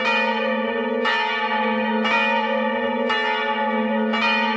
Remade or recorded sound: recorded